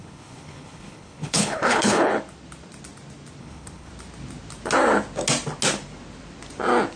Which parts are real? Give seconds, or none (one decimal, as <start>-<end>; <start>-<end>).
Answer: 2.1-3.4; 3.9-7.0